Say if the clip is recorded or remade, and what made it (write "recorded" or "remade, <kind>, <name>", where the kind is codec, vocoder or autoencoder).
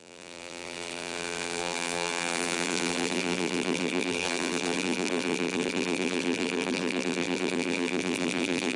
remade, vocoder, BigVGAN v2